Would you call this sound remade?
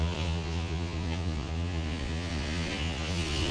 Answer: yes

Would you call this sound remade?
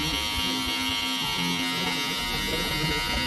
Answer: no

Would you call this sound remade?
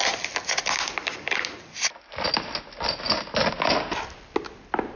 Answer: no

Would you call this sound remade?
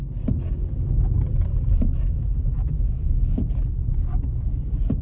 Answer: no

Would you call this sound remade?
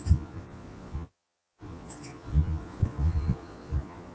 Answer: yes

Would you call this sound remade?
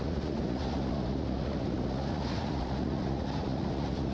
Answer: yes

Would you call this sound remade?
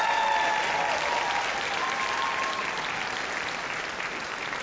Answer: no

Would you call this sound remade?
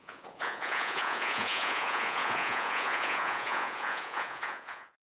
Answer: yes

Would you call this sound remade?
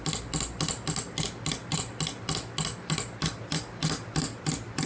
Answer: no